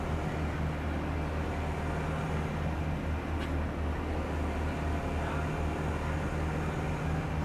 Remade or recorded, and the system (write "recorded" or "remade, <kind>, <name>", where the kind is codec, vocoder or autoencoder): recorded